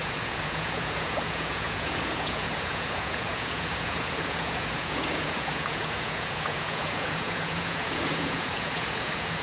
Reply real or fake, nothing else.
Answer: fake